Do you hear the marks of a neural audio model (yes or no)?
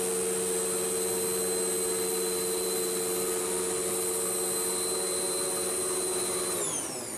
no